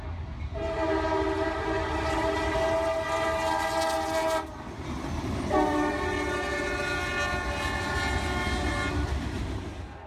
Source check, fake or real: real